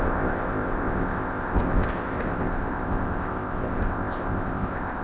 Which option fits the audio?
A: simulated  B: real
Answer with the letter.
A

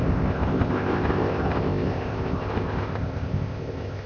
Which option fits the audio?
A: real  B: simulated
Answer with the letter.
B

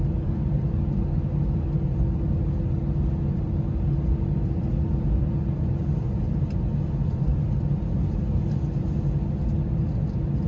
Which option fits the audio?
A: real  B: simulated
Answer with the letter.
A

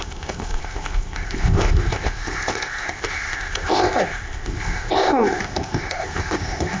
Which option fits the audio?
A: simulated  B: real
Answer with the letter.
A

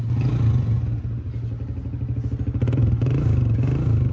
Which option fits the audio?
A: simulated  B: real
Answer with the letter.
B